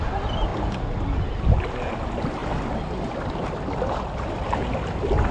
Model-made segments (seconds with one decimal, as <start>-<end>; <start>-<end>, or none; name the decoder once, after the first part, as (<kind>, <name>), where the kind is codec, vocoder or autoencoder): none